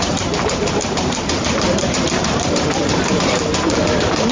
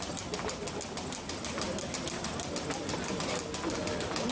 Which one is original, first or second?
second